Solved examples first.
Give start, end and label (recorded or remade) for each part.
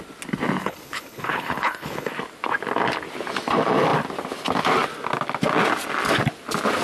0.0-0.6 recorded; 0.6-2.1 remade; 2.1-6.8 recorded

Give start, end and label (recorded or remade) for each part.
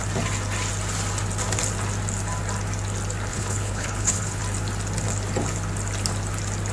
0.0-3.3 recorded; 3.3-4.4 remade; 4.4-6.7 recorded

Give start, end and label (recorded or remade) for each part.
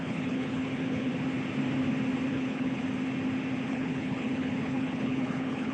0.0-1.1 remade; 1.1-2.3 recorded; 2.3-2.8 remade; 2.8-3.7 recorded; 3.7-5.7 remade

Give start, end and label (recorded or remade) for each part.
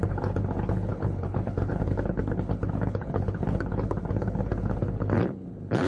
0.0-5.9 remade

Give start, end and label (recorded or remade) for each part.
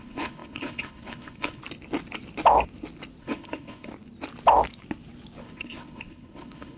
0.0-1.6 remade; 1.6-3.2 recorded; 3.2-3.9 remade; 3.9-5.4 recorded; 5.4-6.8 remade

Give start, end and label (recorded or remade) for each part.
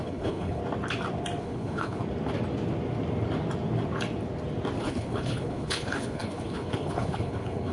0.0-0.6 remade; 0.6-1.4 recorded; 1.4-2.0 remade; 2.0-4.8 recorded; 4.8-7.7 remade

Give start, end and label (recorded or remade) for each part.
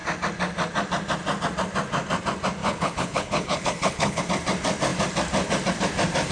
0.0-2.6 recorded; 2.6-4.2 remade; 4.2-6.3 recorded